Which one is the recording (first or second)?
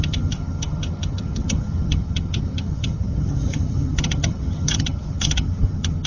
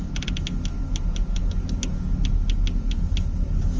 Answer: second